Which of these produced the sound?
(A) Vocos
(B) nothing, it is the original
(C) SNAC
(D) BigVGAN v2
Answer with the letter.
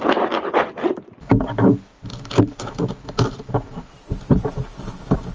B